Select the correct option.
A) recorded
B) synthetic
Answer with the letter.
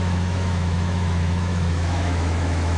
B